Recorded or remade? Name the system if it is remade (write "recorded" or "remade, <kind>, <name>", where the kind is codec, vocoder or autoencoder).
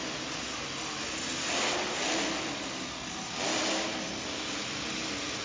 recorded